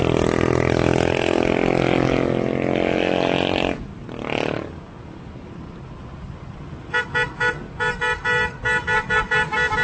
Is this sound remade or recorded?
recorded